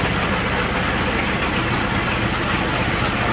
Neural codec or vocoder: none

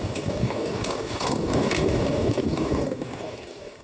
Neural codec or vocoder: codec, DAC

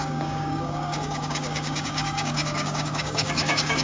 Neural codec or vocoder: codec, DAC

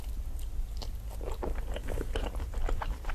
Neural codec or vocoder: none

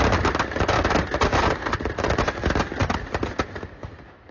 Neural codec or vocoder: none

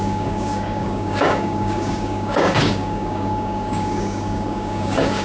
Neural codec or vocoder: codec, DAC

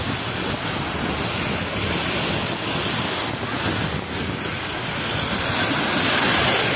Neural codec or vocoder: none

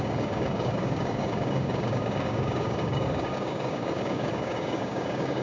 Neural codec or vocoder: codec, DAC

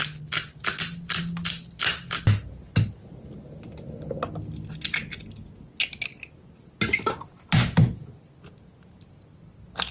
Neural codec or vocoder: none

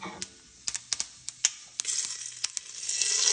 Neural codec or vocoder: none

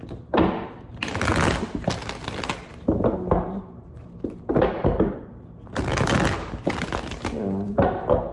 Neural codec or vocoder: none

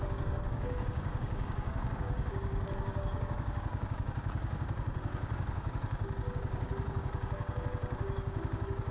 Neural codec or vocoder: codec, DAC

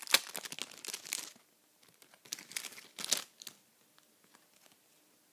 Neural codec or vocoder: none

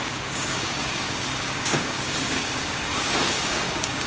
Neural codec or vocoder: codec, DAC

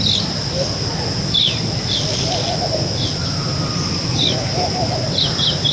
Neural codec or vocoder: none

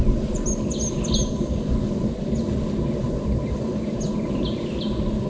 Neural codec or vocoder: none